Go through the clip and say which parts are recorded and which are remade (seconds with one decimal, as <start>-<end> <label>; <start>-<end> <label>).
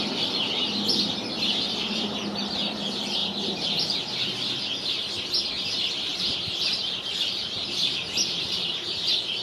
0.0-6.1 recorded; 6.1-6.7 remade; 6.7-7.6 recorded; 7.6-8.9 remade; 8.9-9.4 recorded